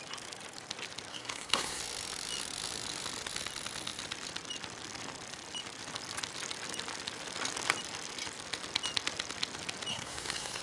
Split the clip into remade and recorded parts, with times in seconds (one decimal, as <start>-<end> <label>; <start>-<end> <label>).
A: 0.0-1.1 recorded; 1.1-1.8 remade; 1.8-9.9 recorded; 9.9-10.6 remade